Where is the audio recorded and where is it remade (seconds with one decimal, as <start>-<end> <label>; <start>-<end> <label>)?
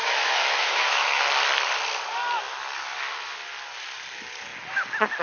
0.0-1.2 remade; 1.2-5.2 recorded